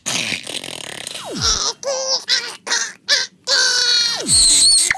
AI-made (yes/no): no